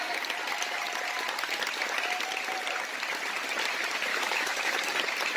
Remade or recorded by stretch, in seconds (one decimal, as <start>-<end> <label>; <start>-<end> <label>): 0.0-4.1 recorded; 4.1-4.8 remade; 4.8-5.4 recorded